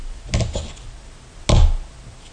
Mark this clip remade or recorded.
recorded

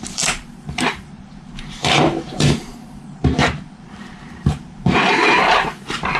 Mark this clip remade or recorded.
remade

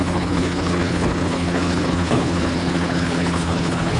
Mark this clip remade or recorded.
remade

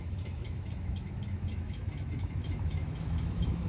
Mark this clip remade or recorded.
remade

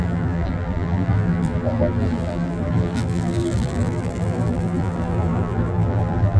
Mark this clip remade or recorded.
remade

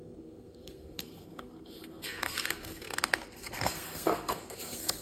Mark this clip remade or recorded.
remade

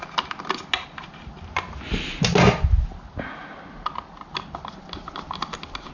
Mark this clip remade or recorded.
recorded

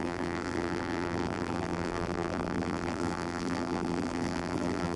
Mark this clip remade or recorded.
remade